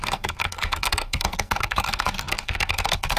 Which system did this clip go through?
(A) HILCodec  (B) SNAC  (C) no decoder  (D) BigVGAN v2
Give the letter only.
B